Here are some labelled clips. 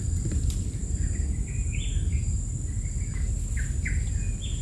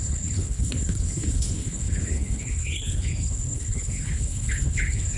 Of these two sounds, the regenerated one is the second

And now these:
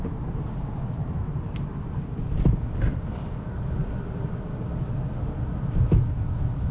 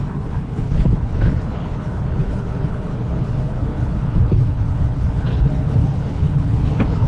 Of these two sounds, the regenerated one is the second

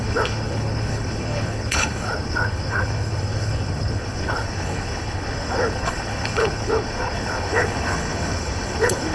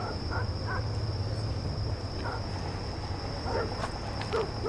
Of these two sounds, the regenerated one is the first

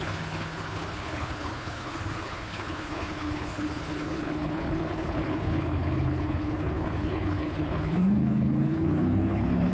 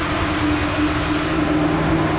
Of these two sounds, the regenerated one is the first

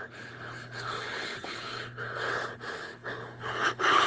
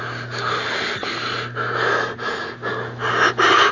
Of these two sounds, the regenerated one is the first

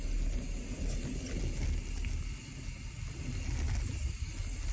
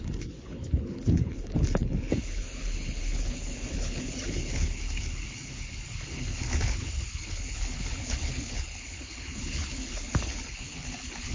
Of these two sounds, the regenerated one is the second